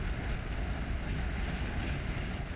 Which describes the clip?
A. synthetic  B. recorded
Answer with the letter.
B